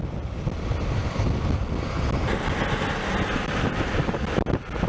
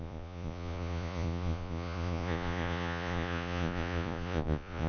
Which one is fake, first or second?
second